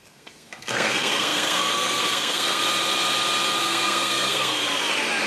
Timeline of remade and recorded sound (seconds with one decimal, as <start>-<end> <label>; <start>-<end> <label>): 0.0-2.6 remade; 2.6-3.6 recorded; 3.6-4.6 remade; 4.6-5.3 recorded